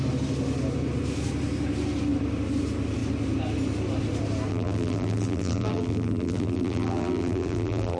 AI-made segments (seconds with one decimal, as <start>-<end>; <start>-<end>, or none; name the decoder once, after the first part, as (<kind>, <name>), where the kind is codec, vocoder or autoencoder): 4.5-8.0 (vocoder, BigVGAN v2)